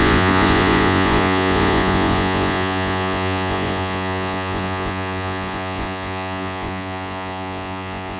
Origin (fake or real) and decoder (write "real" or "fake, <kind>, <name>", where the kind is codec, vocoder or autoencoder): fake, vocoder, Vocos